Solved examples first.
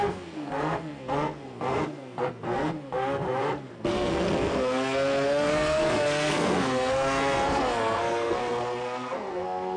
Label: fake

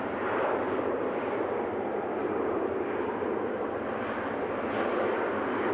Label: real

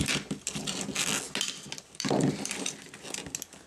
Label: real